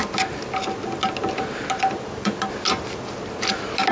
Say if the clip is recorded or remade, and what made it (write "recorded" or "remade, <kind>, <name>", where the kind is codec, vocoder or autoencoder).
recorded